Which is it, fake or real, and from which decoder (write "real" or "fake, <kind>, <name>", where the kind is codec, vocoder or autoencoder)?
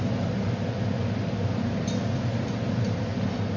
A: real